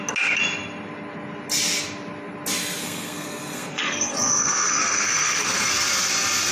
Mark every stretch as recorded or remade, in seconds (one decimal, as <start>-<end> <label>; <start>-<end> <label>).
0.0-2.8 recorded; 2.8-5.7 remade; 5.7-6.5 recorded